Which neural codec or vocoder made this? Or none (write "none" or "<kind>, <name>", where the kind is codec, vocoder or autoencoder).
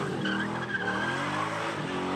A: none